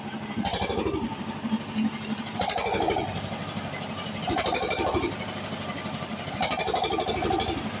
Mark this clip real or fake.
fake